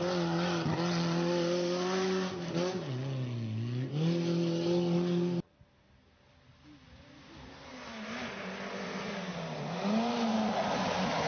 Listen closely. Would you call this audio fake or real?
real